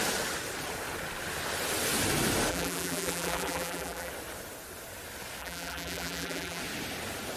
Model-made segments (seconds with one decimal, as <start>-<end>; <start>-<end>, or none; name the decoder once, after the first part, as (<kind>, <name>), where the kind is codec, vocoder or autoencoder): 2.5-4.1 (vocoder, BigVGAN v2); 5.4-6.6